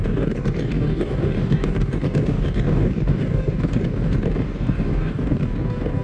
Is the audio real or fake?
fake